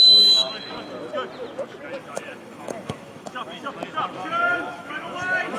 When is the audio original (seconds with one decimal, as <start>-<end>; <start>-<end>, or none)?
0.0-2.0; 3.7-4.2